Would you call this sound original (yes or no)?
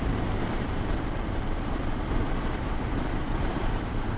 no